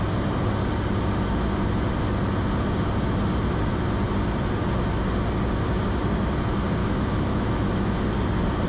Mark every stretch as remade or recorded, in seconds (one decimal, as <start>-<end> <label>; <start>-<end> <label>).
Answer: 0.0-6.8 recorded; 6.8-8.0 remade; 8.0-8.7 recorded